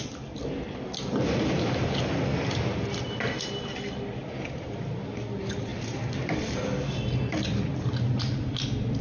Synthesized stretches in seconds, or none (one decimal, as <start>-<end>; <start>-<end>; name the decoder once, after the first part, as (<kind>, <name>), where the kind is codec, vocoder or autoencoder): 5.7-7.9 (vocoder, BigVGAN v2)

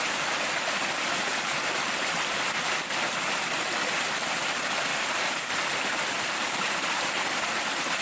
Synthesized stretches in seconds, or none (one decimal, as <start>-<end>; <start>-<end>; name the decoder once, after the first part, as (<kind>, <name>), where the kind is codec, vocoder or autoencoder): 4.9-7.0 (vocoder, BigVGAN v2)

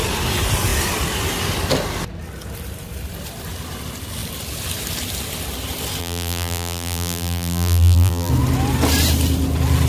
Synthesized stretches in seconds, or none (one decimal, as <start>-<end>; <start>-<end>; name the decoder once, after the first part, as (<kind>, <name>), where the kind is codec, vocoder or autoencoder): 6.0-8.3 (vocoder, BigVGAN v2)

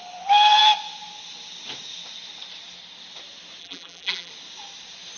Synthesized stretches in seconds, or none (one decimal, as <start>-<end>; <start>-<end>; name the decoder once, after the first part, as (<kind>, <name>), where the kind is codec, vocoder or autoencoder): 3.6-4.3 (vocoder, BigVGAN v2)

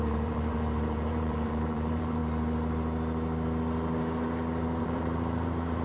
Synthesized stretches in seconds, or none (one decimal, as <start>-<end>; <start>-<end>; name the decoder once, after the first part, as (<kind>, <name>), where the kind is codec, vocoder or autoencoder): 0.0-2.2 (vocoder, BigVGAN v2); 4.8-5.8

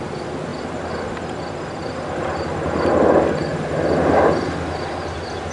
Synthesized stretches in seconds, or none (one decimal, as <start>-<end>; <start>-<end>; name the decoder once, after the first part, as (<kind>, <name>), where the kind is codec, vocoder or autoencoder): none